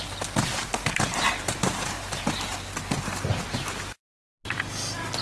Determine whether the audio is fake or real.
real